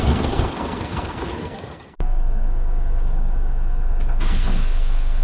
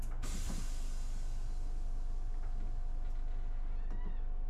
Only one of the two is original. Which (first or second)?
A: second